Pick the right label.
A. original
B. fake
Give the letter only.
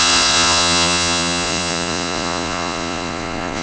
B